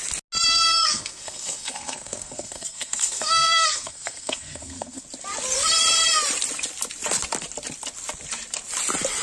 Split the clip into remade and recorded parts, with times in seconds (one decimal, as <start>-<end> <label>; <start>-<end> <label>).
0.0-0.5 recorded; 0.5-5.0 remade; 5.0-9.2 recorded